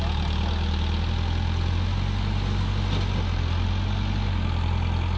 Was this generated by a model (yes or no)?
no